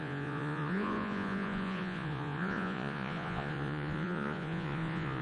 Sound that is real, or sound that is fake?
fake